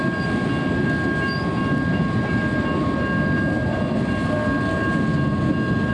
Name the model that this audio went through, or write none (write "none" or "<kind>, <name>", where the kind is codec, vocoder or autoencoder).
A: none